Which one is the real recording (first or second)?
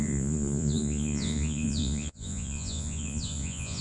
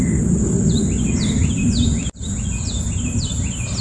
second